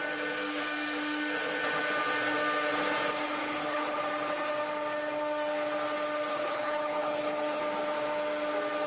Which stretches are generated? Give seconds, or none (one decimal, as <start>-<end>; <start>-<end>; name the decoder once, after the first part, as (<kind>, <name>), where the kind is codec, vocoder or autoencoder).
3.4-4.0 (codec, HILCodec); 6.3-7.6